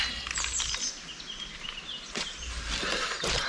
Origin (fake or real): real